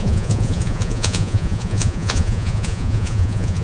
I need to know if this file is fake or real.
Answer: fake